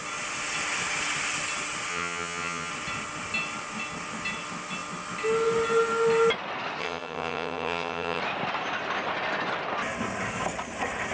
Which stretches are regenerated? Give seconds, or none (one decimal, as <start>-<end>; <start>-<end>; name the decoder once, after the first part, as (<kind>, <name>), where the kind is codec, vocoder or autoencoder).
1.9-2.7 (vocoder, HiFi-GAN); 6.8-8.2